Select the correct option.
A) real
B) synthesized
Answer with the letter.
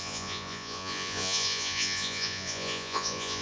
B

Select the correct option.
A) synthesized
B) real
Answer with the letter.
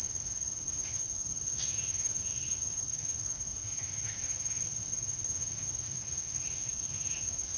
A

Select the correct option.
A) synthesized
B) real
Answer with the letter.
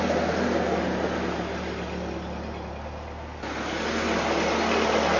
B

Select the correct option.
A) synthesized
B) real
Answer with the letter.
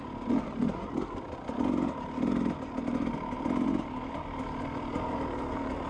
B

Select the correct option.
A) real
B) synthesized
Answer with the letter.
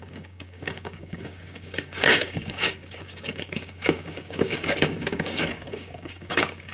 B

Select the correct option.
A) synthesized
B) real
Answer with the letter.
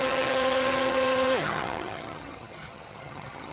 A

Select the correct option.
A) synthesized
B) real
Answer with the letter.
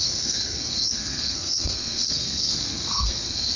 A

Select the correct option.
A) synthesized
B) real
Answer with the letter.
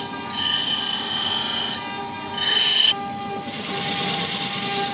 B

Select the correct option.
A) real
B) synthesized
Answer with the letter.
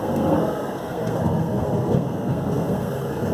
B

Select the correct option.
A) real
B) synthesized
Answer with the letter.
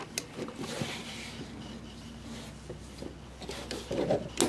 A